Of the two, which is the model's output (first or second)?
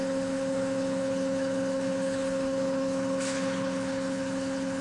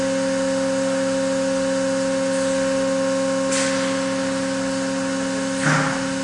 first